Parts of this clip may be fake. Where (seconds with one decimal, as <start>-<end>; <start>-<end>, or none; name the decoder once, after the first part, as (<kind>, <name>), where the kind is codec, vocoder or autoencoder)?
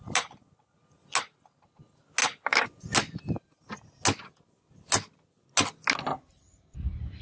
none